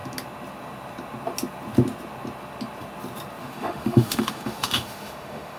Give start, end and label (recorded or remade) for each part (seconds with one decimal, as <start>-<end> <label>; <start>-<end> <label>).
0.0-3.4 recorded; 3.4-5.6 remade